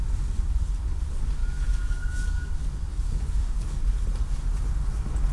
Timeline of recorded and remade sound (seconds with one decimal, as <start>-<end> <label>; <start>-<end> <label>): 0.0-1.4 recorded; 1.4-2.5 remade; 2.5-2.9 recorded; 2.9-3.8 remade; 3.8-5.3 recorded